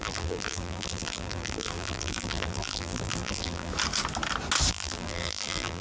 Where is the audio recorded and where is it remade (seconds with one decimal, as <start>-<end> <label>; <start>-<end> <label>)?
0.0-3.7 remade; 3.7-4.7 recorded; 4.7-5.8 remade